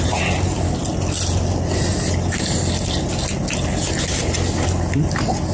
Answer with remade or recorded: recorded